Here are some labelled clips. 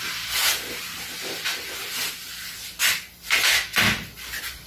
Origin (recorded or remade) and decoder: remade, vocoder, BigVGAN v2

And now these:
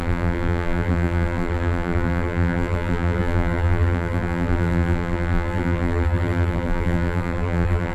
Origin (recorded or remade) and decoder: remade, vocoder, BigVGAN v2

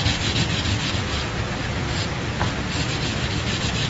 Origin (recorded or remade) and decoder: recorded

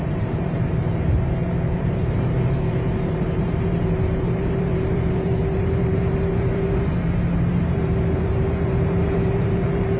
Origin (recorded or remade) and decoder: remade, vocoder, BigVGAN v2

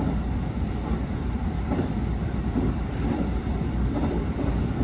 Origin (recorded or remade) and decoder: remade, vocoder, BigVGAN v2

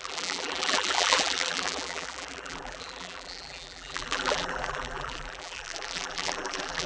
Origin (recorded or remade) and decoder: remade, vocoder, BigVGAN v2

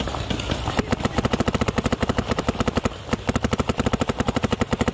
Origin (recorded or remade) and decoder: remade, vocoder, BigVGAN v2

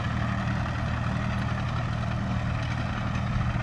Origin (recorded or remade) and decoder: recorded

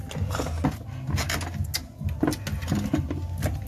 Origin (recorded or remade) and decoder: recorded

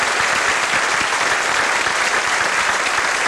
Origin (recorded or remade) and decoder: recorded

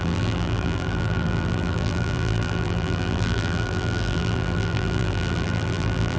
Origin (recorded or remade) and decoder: remade, vocoder, BigVGAN v2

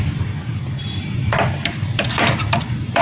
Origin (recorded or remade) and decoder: remade, vocoder, BigVGAN v2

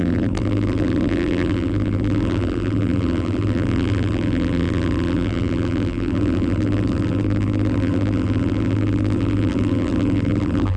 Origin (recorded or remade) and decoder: remade, vocoder, BigVGAN v2